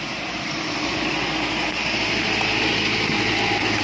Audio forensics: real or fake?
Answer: real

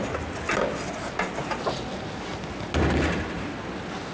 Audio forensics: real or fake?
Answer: real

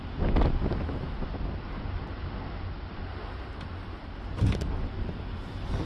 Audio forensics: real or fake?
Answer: real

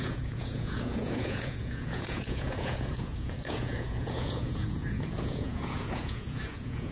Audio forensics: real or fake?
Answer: fake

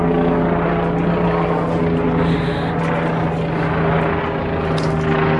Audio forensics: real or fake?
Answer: real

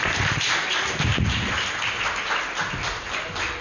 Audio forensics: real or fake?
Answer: real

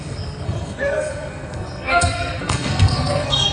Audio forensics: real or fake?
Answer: fake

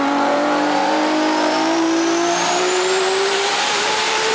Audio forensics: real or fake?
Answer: fake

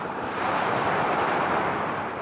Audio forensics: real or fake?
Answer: fake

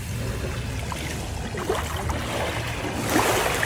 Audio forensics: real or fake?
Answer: real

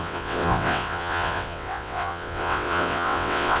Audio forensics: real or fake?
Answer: fake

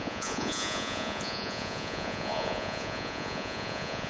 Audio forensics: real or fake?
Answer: fake